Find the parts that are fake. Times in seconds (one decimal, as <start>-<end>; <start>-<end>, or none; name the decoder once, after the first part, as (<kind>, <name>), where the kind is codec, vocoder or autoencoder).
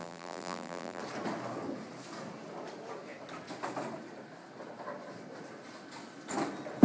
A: 0.0-1.0 (vocoder, BigVGAN v2)